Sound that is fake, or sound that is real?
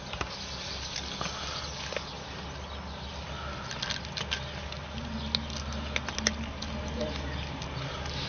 real